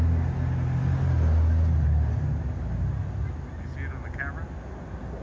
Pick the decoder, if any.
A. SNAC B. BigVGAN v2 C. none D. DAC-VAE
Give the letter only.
C